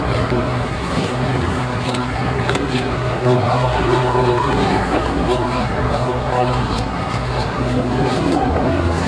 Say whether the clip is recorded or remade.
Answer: remade